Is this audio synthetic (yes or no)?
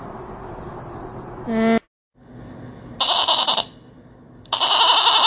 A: no